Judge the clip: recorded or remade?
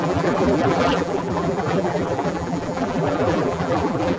remade